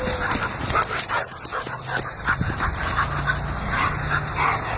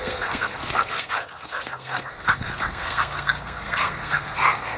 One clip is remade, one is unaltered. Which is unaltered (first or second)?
first